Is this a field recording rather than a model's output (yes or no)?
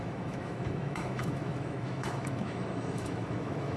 no